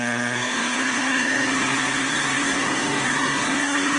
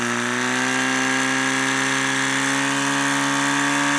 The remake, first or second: first